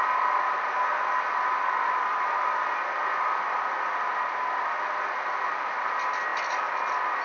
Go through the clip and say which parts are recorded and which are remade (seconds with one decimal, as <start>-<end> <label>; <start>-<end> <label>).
0.0-7.2 recorded